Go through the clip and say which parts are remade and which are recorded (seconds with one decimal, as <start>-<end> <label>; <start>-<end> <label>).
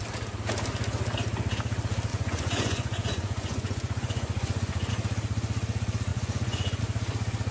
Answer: 0.0-2.1 recorded; 2.1-4.9 remade; 4.9-6.1 recorded; 6.1-6.8 remade; 6.8-7.5 recorded